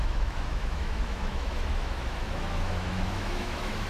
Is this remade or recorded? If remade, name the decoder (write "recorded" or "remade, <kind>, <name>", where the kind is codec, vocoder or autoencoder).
remade, autoencoder, DAC-VAE